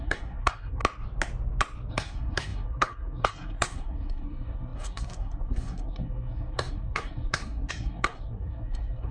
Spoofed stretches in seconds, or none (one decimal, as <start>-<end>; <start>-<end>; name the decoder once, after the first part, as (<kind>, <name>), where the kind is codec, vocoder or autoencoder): 0.0-0.8 (codec, SNAC); 1.9-9.1